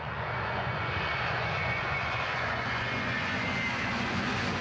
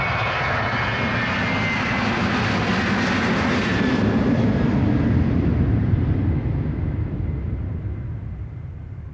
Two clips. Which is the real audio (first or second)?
second